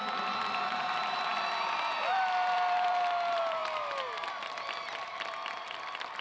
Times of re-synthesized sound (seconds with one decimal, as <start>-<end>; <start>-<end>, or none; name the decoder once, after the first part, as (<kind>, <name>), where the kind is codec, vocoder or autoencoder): 0.0-3.6 (vocoder, BigVGAN v2); 4.3-6.2